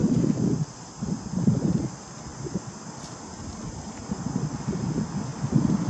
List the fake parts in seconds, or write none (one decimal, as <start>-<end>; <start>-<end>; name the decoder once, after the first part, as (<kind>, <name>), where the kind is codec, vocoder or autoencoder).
none

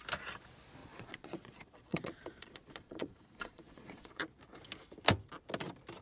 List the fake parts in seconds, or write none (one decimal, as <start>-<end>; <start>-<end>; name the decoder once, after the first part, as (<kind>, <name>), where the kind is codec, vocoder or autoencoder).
0.8-4.4 (vocoder, Vocos)

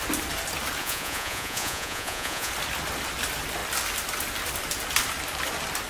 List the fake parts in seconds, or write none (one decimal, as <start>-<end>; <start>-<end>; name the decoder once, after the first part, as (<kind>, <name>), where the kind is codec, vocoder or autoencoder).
0.8-2.5 (vocoder, Vocos)

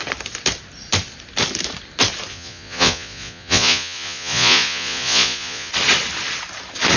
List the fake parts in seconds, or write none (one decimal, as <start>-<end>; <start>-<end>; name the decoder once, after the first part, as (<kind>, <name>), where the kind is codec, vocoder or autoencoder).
2.3-5.7 (vocoder, Vocos)

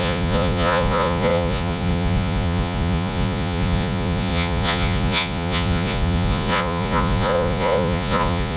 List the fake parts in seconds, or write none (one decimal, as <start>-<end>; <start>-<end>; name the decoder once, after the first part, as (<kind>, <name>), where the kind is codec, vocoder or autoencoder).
0.0-8.6 (vocoder, Vocos)

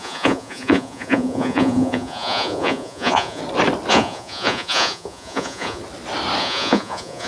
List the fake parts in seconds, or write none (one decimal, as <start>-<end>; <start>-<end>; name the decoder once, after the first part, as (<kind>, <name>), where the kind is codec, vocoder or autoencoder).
0.0-3.4 (vocoder, Vocos); 3.9-5.8; 6.4-7.3

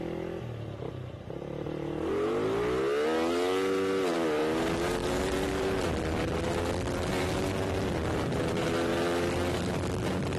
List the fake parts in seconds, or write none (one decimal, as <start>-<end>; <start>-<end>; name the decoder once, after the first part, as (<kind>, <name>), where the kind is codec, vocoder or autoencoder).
none

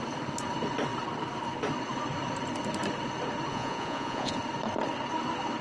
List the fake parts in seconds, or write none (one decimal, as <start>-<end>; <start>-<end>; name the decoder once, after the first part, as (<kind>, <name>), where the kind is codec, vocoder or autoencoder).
3.5-4.4 (vocoder, Vocos)